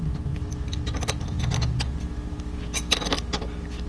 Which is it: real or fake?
real